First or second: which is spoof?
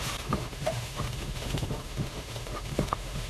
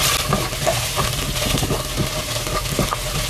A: first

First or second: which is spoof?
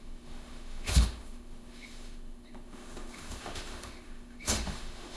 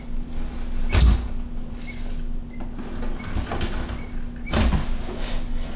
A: first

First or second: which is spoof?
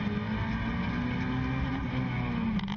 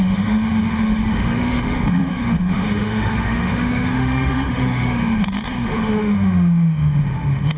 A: second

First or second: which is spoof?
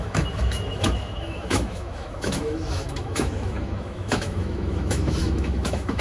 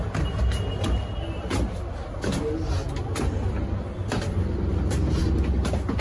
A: first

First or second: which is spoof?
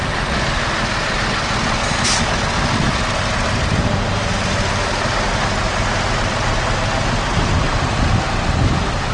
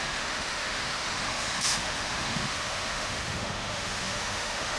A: second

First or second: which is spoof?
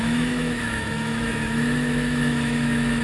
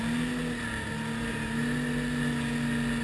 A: first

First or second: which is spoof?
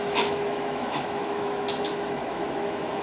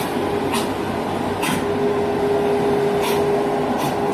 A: first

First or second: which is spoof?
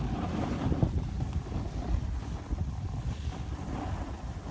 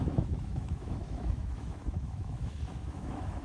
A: second